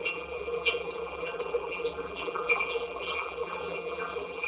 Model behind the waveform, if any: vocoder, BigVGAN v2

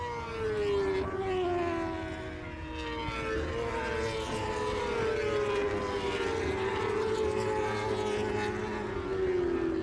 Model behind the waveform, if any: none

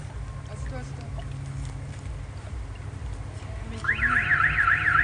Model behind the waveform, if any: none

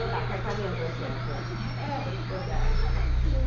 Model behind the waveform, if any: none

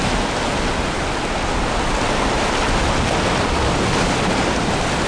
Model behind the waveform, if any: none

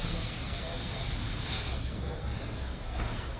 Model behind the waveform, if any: codec, SNAC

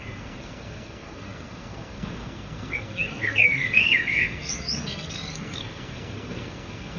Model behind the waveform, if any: codec, SNAC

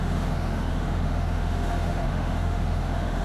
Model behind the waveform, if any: autoencoder, DAC-VAE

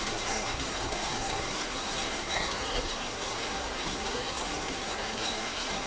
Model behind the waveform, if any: codec, SNAC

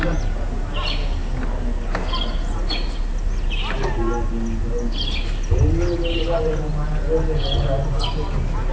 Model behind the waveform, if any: none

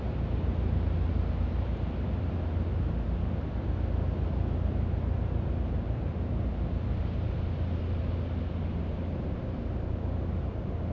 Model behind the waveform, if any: none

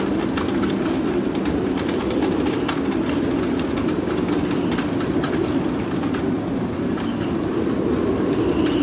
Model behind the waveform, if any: none